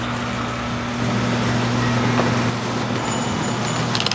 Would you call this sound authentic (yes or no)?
yes